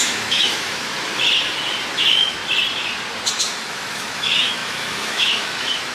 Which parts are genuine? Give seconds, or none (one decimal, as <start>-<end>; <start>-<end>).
0.9-1.9; 2.4-3.4